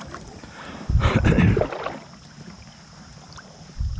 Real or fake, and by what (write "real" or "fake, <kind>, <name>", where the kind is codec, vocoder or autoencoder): real